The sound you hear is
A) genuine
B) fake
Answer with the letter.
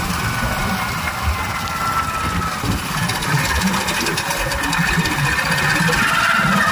A